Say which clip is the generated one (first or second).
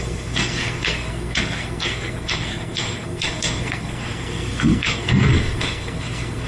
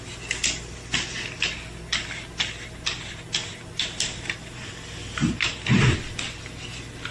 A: first